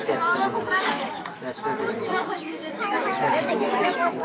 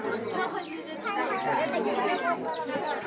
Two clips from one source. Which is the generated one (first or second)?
first